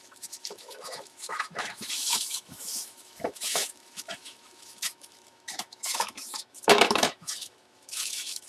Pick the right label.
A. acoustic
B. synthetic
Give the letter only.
B